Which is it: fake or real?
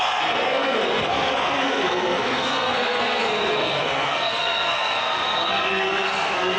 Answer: fake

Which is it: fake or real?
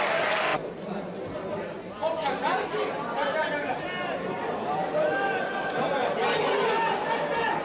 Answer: real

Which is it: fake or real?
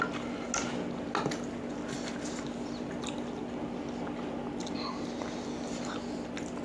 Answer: real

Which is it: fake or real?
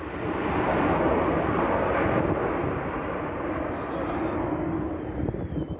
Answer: real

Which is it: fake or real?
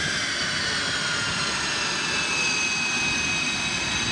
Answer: real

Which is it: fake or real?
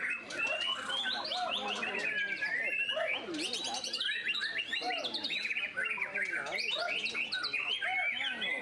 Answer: real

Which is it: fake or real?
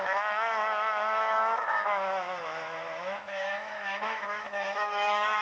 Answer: fake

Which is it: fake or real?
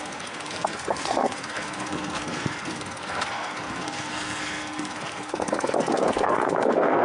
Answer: fake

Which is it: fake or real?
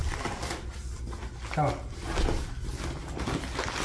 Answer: real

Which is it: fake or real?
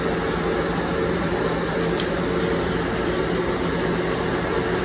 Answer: real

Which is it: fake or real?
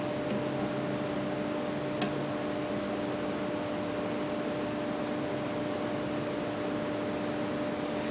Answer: real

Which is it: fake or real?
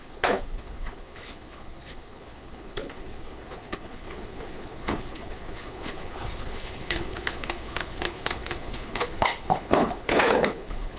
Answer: fake